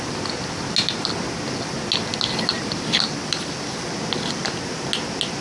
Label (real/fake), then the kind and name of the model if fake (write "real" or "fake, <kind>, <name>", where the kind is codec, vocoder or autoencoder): real